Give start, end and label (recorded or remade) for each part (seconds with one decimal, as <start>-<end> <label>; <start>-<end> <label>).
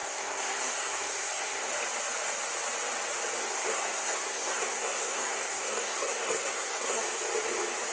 0.0-1.7 remade; 1.7-3.4 recorded; 3.4-7.0 remade; 7.0-7.9 recorded